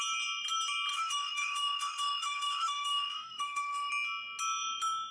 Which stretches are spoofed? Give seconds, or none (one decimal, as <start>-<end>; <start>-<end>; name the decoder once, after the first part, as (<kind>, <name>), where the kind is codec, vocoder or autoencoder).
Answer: 0.9-3.9 (autoencoder, DAC-VAE)